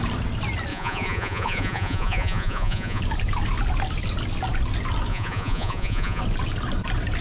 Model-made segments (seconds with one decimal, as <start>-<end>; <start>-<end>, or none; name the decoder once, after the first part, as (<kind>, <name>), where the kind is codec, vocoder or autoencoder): 0.7-3.0 (vocoder, Vocos); 5.1-6.2